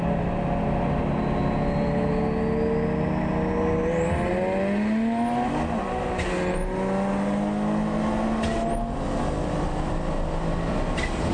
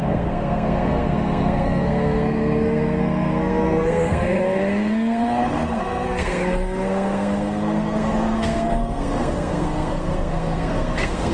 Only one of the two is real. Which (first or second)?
first